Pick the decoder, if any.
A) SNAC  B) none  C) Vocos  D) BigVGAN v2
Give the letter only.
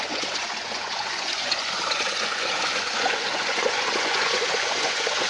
C